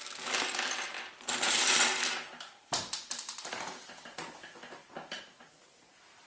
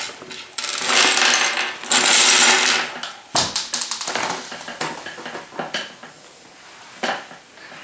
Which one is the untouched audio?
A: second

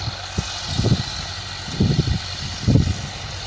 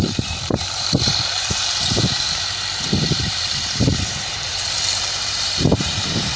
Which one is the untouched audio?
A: first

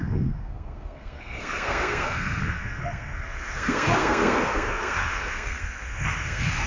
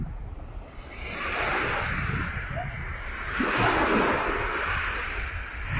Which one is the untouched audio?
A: second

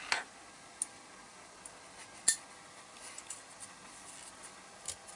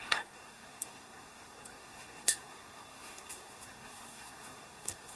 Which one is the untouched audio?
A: first